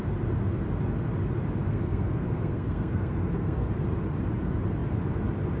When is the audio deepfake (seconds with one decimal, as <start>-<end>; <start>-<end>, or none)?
1.7-3.7